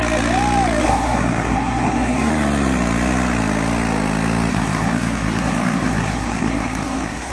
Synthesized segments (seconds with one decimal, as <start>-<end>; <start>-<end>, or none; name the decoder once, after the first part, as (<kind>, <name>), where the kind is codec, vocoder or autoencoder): 0.8-2.3 (codec, SNAC); 4.5-7.3